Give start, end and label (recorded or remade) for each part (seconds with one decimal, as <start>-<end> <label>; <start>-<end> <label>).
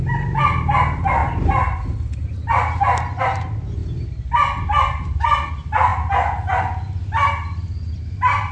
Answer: 0.0-8.5 recorded